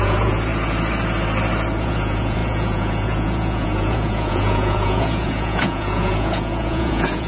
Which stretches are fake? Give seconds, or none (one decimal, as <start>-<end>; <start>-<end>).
0.0-0.5; 1.8-7.3

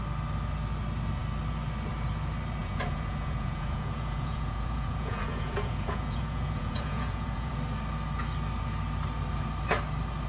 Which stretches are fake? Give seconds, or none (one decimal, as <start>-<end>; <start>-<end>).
2.6-7.5

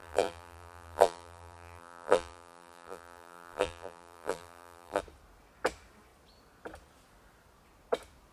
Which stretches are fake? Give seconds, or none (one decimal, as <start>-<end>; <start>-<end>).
0.0-5.0